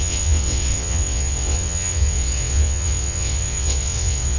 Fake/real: fake